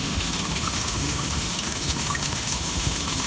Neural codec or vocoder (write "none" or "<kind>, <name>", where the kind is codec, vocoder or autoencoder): autoencoder, DAC-VAE